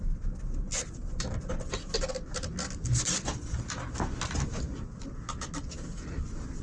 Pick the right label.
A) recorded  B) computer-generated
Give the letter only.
A